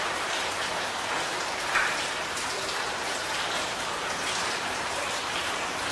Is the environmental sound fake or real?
fake